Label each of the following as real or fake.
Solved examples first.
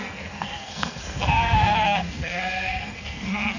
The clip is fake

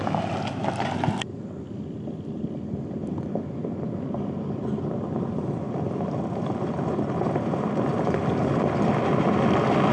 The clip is real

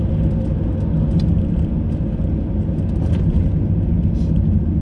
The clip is real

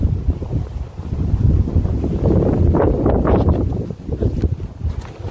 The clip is real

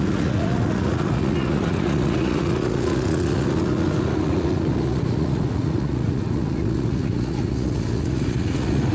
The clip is fake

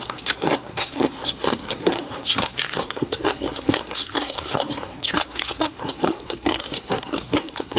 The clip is fake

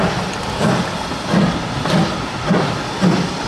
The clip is real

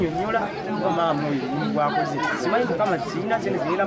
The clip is real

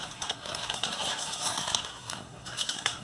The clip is fake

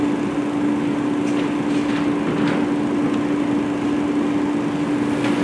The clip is real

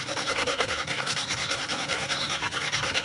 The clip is fake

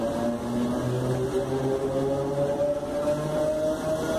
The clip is real